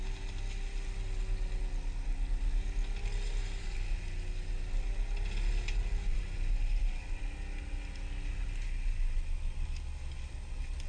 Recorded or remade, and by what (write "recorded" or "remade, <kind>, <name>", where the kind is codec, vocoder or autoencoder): recorded